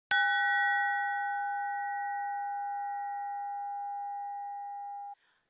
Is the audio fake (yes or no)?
no